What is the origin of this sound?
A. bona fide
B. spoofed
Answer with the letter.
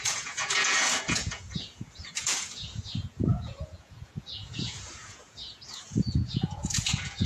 B